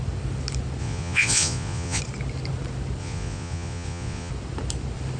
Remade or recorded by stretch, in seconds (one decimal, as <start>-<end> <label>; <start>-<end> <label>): 0.0-0.8 recorded; 0.8-2.0 remade; 2.0-3.0 recorded; 3.0-4.3 remade; 4.3-5.2 recorded